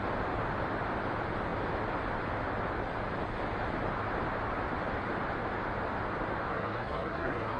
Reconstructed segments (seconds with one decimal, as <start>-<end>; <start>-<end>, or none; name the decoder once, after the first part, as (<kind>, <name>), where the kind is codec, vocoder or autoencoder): 6.5-7.6 (codec, SNAC)